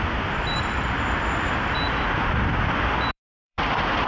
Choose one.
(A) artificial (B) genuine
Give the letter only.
A